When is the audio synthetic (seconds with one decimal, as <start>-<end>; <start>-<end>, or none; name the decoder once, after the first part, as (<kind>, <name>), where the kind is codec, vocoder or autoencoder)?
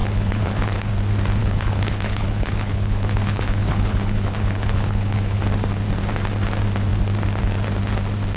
0.0-0.9 (codec, HILCodec); 1.4-5.4